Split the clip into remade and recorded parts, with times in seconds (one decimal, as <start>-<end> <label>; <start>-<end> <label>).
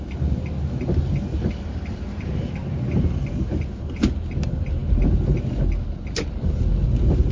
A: 0.0-7.3 recorded